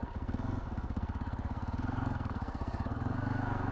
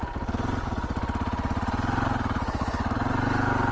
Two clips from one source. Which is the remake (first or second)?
first